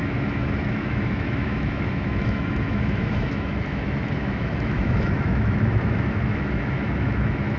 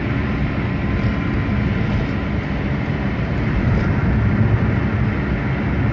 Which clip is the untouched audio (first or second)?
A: second